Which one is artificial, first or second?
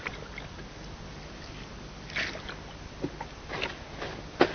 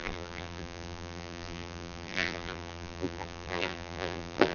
second